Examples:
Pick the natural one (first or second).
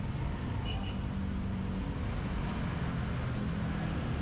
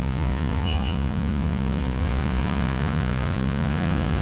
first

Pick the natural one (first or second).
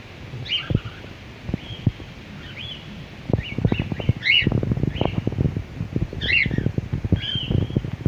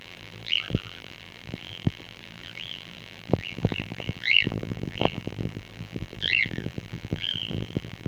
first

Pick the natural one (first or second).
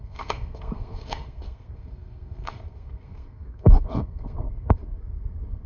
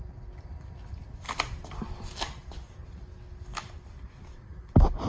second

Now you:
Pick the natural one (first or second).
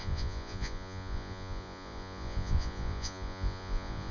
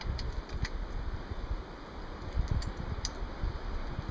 second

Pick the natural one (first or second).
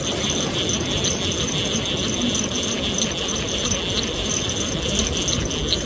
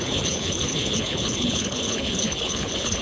first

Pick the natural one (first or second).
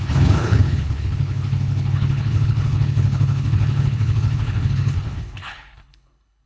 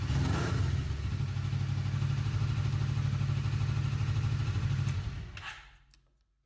second